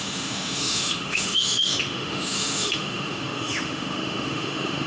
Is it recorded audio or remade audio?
remade